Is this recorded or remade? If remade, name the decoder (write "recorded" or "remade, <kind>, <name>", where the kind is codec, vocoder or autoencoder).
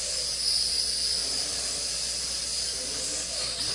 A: recorded